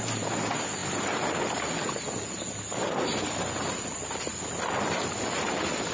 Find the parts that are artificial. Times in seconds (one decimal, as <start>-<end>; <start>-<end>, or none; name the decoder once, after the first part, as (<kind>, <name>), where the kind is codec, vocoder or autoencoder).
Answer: none